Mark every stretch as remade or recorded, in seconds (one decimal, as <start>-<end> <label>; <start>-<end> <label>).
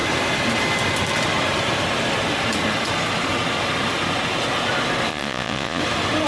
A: 0.0-5.1 recorded; 5.1-5.8 remade; 5.8-6.3 recorded